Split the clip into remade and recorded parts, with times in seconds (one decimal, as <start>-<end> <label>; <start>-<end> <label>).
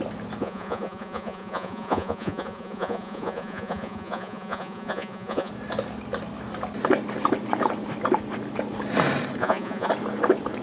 0.0-0.4 recorded; 0.4-5.5 remade; 5.5-9.4 recorded; 9.4-9.9 remade; 9.9-10.6 recorded